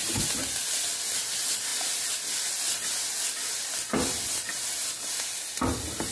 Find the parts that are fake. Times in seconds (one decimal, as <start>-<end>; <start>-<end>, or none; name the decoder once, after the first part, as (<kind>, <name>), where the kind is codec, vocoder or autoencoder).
none